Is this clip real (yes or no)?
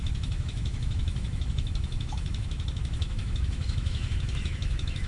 no